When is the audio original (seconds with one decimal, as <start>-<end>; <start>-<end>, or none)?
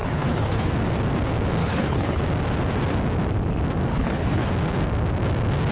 0.7-1.6; 2.2-3.9; 4.5-5.7